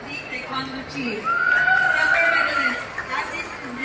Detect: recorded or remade recorded